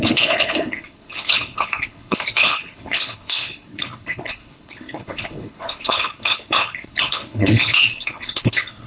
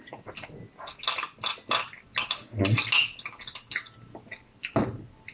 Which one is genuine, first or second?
second